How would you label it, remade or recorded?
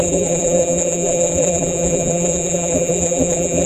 remade